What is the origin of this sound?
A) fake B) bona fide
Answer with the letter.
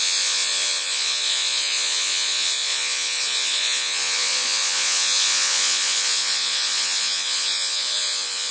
A